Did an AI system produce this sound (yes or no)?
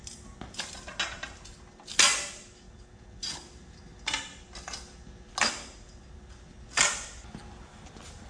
no